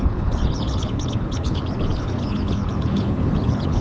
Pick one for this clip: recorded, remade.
remade